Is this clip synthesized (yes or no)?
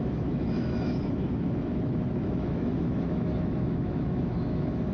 yes